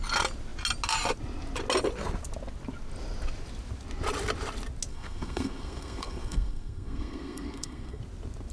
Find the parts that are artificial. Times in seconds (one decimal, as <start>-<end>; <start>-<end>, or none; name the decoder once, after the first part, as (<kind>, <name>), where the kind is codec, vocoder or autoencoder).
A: 4.9-8.0 (codec, SNAC)